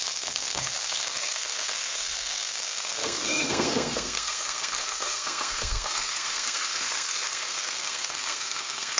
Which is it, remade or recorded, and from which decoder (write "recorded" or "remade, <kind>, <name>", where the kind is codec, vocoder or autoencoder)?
remade, codec, SNAC